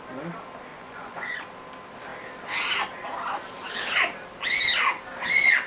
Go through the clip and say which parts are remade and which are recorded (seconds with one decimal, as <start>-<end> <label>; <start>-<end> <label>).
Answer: 0.0-0.7 recorded; 0.7-1.5 remade; 1.5-5.7 recorded